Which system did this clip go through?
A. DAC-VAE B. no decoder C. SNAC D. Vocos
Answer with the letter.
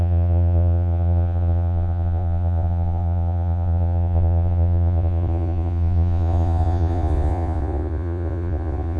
D